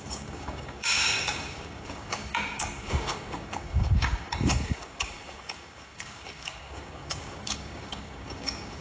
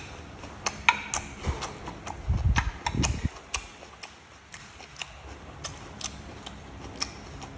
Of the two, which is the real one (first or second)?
second